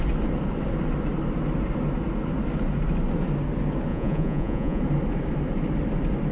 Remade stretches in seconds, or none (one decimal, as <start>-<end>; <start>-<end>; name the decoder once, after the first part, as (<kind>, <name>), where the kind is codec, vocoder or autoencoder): 3.9-4.8 (vocoder, Vocos)